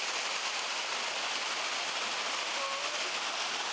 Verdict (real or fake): real